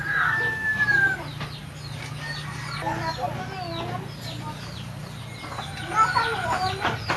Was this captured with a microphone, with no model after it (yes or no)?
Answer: yes